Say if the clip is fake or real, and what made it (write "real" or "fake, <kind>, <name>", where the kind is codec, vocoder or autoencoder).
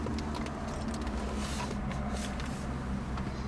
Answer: real